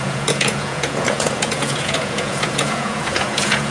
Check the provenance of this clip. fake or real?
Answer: fake